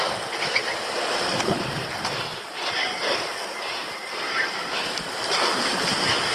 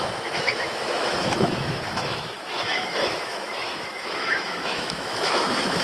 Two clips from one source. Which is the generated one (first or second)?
second